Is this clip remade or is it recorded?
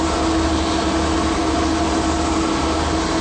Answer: recorded